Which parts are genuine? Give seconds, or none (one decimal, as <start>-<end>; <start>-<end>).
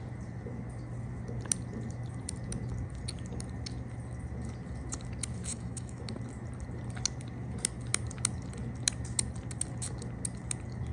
0.0-5.5; 6.0-10.9